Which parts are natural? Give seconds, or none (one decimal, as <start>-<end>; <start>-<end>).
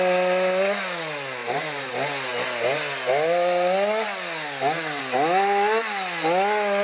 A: 0.0-1.4; 1.9-6.8